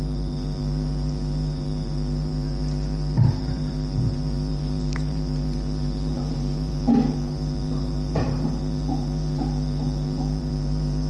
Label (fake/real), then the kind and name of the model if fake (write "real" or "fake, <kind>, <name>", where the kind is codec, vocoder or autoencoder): fake, vocoder, BigVGAN v2